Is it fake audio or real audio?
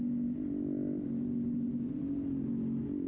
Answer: real